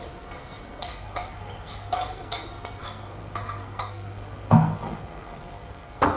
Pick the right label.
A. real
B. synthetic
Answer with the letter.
B